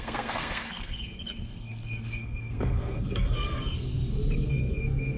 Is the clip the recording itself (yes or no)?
no